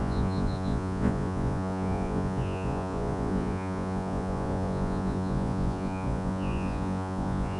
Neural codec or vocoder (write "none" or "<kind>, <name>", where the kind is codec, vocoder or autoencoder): vocoder, Vocos